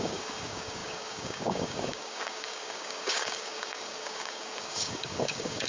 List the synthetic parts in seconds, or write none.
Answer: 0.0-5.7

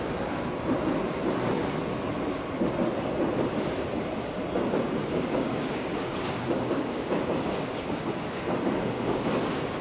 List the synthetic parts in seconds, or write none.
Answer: 4.8-9.4

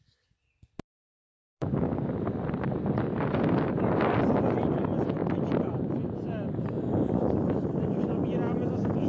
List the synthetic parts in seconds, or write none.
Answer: 1.0-2.1